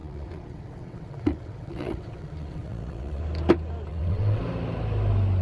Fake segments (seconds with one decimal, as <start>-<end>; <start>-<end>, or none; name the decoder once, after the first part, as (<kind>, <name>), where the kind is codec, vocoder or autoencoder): 0.0-3.2 (vocoder, WaveNeXt); 3.9-4.4